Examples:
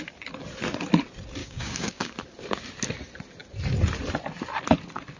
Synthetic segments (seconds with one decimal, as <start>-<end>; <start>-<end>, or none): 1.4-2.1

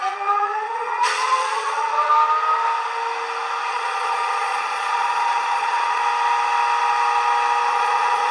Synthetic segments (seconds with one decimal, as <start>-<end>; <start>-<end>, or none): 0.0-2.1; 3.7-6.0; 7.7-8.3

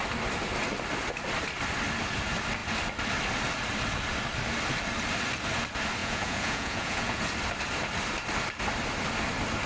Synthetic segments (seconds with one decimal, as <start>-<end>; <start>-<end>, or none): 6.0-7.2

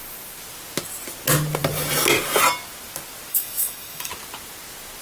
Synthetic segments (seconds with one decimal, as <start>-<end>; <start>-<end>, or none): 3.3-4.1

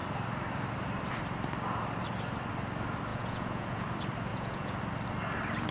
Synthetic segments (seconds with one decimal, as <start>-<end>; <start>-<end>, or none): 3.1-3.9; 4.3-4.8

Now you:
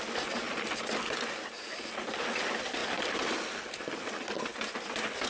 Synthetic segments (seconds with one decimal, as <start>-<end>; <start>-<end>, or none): 2.8-4.1

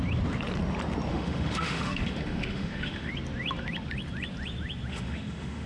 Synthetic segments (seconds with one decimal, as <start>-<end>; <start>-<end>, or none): 1.1-3.1; 4.9-5.7